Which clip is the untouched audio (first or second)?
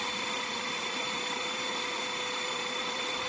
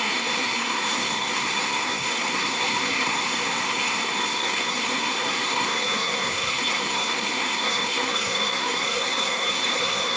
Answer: first